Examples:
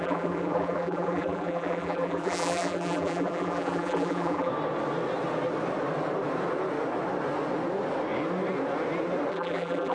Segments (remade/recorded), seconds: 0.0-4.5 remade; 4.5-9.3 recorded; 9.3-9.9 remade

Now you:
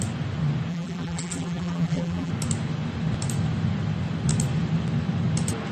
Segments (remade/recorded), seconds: 0.0-0.7 recorded; 0.7-2.3 remade; 2.3-5.7 recorded

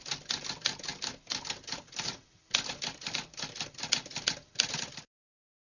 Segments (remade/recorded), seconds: 0.0-0.9 recorded; 0.9-4.3 remade; 4.3-5.7 recorded

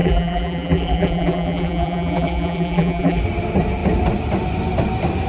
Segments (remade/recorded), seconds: 0.0-3.2 remade; 3.2-5.3 recorded

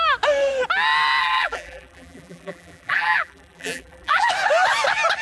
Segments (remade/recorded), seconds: 0.0-1.2 recorded; 1.2-4.3 remade; 4.3-5.2 recorded

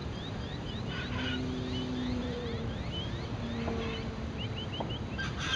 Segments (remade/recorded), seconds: 0.0-0.7 remade; 0.7-2.2 recorded; 2.2-2.8 remade; 2.8-5.6 recorded